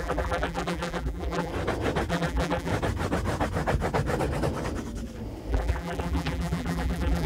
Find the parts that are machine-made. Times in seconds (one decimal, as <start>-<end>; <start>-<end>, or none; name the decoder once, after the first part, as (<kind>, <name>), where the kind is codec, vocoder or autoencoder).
0.0-1.5 (vocoder, BigVGAN v2); 2.1-2.7; 5.5-7.3